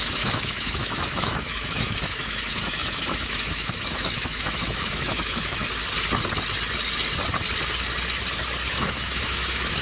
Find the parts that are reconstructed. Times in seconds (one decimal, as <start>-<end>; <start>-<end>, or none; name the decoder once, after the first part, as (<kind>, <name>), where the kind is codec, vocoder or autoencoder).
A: 0.0-5.6 (autoencoder, DAC-VAE); 8.7-9.8